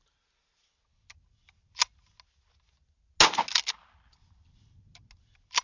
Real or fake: real